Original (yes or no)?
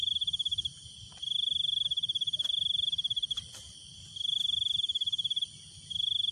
yes